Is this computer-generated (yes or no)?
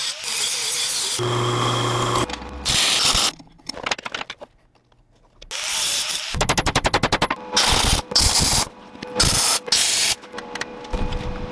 no